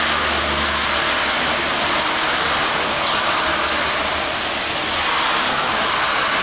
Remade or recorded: recorded